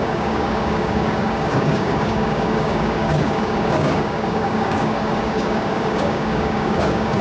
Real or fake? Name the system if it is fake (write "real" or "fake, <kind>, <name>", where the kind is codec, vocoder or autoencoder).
fake, codec, DAC